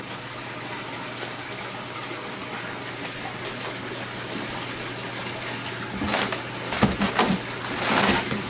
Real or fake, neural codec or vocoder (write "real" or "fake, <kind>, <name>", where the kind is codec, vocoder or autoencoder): real